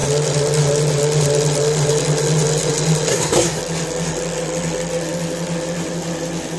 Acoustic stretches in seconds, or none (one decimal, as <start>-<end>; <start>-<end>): 0.0-3.1; 3.6-6.6